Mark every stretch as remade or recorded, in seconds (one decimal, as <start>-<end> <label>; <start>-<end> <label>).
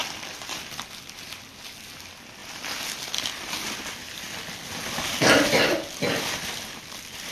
0.0-7.3 recorded